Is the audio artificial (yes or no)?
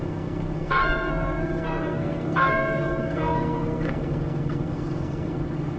yes